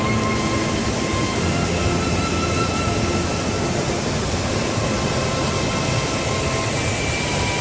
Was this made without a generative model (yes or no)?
yes